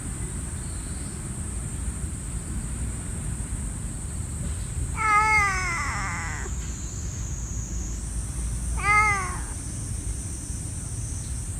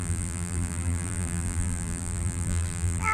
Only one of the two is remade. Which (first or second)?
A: second